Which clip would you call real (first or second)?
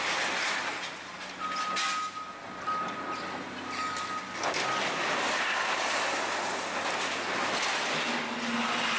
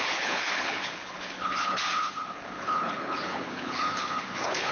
first